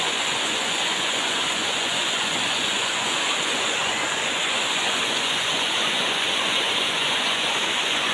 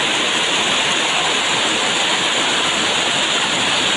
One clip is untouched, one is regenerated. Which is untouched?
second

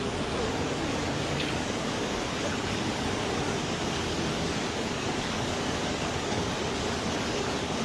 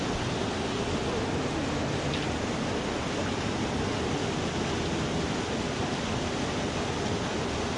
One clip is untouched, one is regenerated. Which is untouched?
second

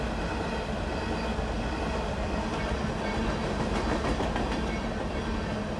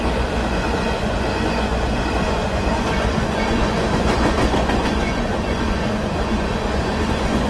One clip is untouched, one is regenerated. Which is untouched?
first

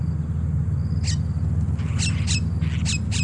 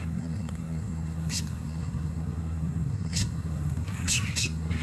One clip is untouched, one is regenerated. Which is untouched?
first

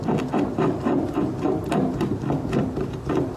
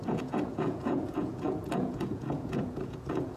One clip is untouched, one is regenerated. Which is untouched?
first